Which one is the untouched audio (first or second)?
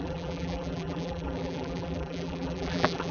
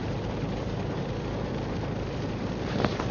second